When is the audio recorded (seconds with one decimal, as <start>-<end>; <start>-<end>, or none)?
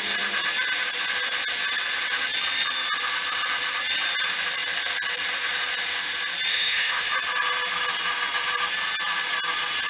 0.0-6.5; 7.1-9.9